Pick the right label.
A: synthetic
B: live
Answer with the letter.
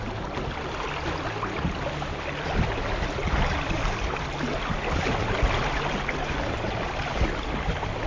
B